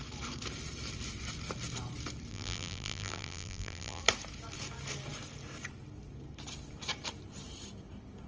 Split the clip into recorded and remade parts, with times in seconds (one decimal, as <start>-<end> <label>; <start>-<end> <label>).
0.0-2.3 recorded; 2.3-4.0 remade; 4.0-8.3 recorded

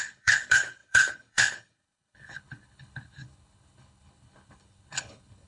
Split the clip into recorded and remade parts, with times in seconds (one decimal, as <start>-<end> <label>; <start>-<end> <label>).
0.0-5.5 remade